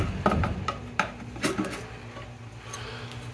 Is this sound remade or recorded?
recorded